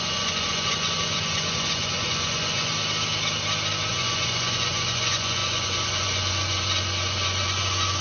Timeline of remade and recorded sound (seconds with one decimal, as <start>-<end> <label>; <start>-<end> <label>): 0.0-2.7 remade; 2.7-3.9 recorded; 3.9-8.0 remade